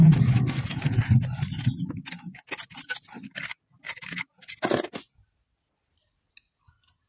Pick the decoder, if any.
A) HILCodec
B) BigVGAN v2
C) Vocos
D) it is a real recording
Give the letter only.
D